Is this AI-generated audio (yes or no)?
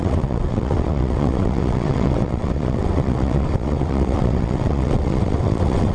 yes